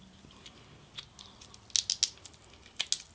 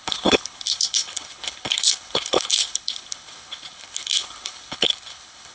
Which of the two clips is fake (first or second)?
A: second